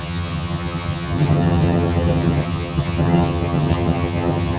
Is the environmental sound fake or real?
fake